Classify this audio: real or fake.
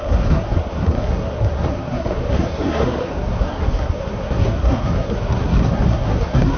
fake